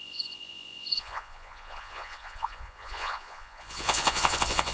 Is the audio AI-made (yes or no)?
yes